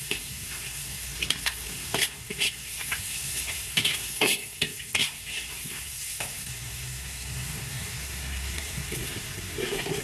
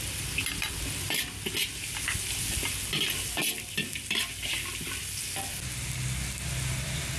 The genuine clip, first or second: second